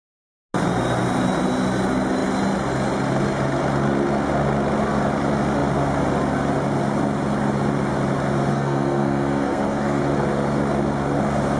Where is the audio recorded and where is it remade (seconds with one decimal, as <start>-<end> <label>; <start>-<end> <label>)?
0.0-8.5 recorded; 8.5-10.0 remade; 10.0-11.6 recorded